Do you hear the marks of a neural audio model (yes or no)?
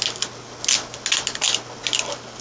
no